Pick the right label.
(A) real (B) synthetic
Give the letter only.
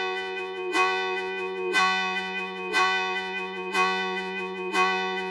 B